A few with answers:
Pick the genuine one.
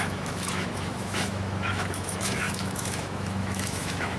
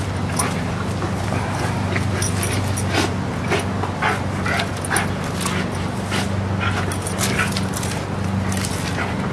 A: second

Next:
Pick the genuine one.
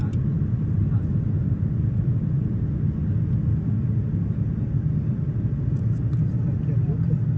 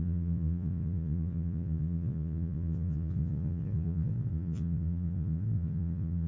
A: first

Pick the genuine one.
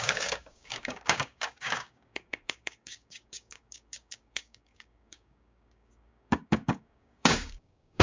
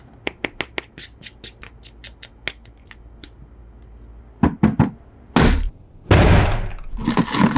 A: second